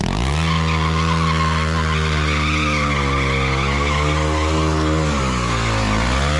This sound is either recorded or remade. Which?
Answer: recorded